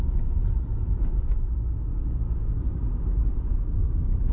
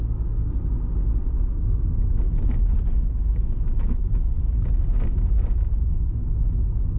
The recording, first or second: second